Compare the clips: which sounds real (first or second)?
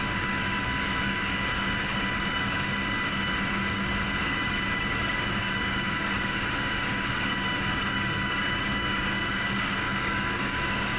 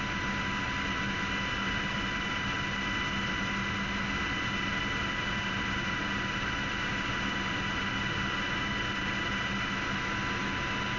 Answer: second